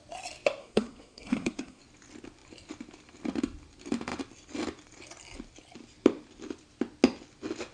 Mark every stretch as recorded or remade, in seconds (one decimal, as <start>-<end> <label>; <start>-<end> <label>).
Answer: 0.0-0.6 recorded; 0.6-1.8 remade; 1.8-7.7 recorded